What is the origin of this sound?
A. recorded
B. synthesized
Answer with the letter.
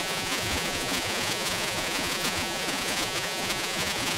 B